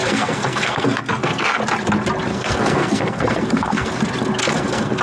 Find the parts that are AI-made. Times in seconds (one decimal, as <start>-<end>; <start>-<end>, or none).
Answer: 0.0-1.6; 2.3-3.9; 4.4-5.0